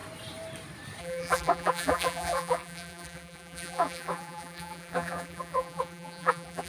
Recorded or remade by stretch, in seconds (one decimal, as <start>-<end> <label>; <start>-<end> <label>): 0.0-1.0 recorded; 1.0-6.7 remade